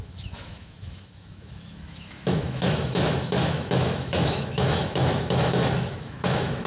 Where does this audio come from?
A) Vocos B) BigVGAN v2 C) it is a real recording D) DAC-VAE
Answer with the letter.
D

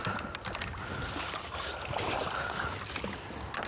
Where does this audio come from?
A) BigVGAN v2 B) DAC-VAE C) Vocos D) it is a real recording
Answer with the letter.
D